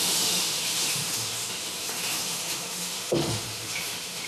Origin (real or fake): fake